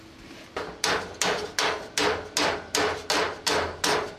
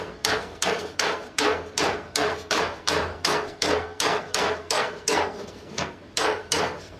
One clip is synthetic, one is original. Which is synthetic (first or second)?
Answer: second